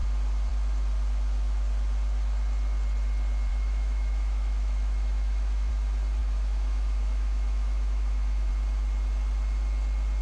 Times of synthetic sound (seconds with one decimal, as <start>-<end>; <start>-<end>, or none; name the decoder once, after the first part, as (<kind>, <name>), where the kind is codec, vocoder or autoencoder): 3.5-5.7 (autoencoder, DAC-VAE); 6.2-8.5

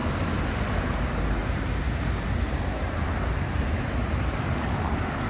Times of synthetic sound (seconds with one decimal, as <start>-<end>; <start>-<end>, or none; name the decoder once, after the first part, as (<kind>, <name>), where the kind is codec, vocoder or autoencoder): 1.4-4.6 (vocoder, BigVGAN v2)

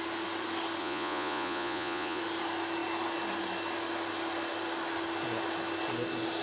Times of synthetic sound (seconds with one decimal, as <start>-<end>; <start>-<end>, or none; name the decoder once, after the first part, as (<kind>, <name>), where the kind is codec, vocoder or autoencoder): 0.8-2.2 (vocoder, Vocos)

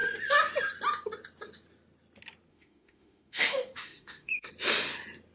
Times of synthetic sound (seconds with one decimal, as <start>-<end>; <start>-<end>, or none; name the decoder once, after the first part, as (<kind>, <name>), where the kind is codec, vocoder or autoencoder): 2.5-4.5 (autoencoder, DAC-VAE)

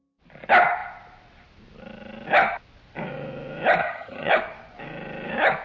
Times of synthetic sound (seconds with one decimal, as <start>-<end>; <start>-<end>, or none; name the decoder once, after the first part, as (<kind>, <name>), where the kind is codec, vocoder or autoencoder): 3.8-4.3 (vocoder, HiFi-GAN)

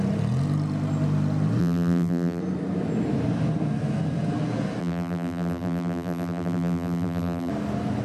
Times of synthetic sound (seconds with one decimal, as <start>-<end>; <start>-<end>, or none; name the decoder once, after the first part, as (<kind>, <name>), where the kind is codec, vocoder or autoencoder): 1.6-2.4 (vocoder, BigVGAN v2); 4.8-7.5